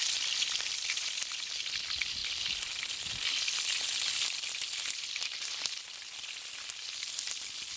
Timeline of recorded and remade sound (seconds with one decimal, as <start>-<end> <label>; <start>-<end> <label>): 0.0-7.8 recorded